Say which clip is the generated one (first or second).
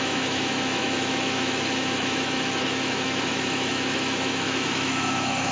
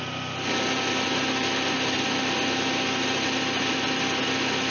first